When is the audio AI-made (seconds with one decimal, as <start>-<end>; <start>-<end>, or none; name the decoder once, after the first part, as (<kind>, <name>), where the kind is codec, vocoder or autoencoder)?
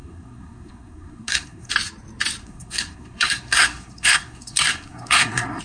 0.0-1.7 (codec, SNAC); 2.4-5.6